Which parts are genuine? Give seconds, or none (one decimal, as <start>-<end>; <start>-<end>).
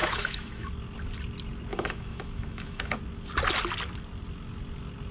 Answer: 0.7-1.7; 3.0-5.1